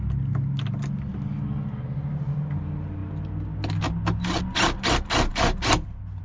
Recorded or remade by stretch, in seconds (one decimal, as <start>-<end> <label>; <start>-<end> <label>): 0.0-6.2 recorded